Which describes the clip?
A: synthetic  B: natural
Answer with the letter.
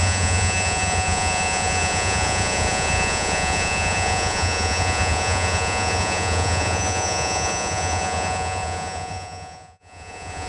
A